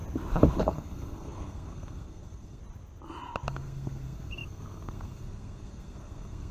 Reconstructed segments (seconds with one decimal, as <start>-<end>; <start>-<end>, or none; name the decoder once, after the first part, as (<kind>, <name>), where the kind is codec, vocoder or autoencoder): 0.6-2.6 (codec, SNAC); 3.5-6.5